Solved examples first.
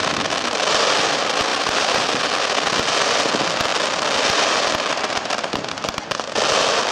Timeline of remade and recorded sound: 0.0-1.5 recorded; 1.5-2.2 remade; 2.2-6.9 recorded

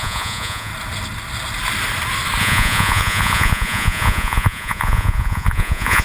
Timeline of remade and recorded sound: 0.0-0.7 remade; 0.7-2.4 recorded; 2.4-6.0 remade

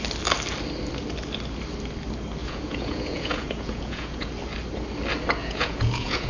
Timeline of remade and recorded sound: 0.0-2.4 recorded; 2.4-4.3 remade; 4.3-5.4 recorded; 5.4-6.3 remade

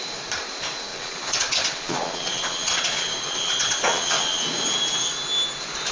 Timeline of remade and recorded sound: 0.0-0.9 recorded; 0.9-4.4 remade; 4.4-5.9 recorded

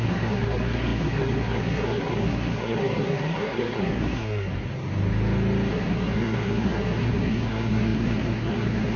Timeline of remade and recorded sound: 0.0-4.5 remade; 4.5-5.7 recorded; 5.7-9.0 remade